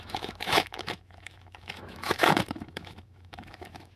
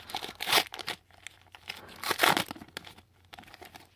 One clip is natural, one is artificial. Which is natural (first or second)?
second